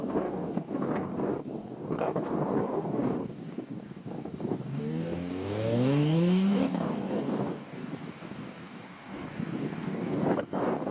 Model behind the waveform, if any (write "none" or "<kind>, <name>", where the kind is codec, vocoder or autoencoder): codec, DAC